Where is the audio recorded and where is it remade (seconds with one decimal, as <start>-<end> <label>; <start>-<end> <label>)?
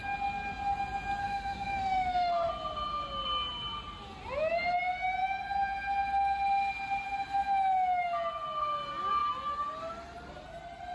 0.0-1.2 recorded; 1.2-2.5 remade; 2.5-10.9 recorded